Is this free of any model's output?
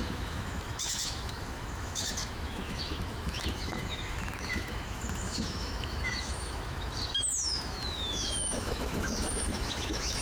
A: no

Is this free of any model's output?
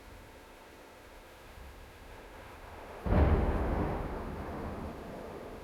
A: no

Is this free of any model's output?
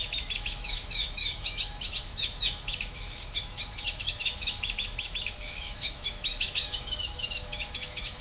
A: no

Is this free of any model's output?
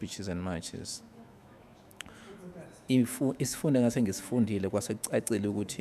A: no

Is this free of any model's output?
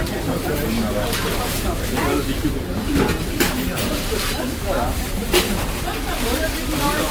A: yes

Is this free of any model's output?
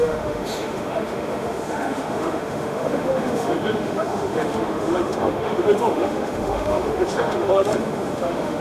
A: no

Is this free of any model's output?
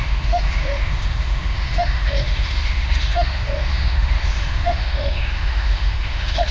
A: no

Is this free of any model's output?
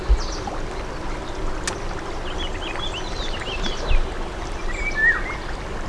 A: yes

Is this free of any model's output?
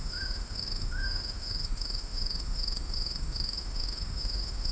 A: no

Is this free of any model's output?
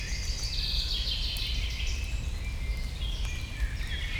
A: yes